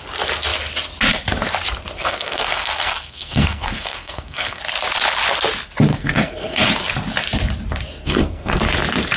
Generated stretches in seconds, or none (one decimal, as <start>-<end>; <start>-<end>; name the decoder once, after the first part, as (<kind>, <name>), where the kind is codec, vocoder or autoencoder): 2.0-4.6 (codec, SNAC); 5.9-6.6; 8.0-8.6